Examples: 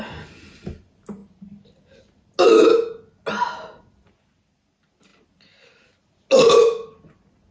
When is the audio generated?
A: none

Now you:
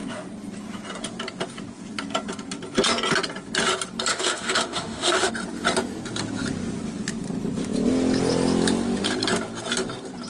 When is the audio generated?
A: 4.1-5.3

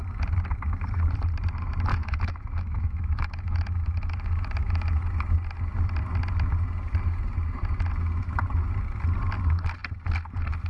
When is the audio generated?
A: 1.9-5.0

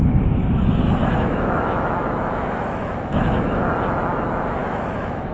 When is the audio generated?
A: 1.0-3.6; 4.6-5.3